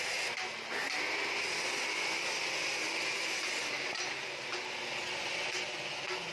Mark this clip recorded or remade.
recorded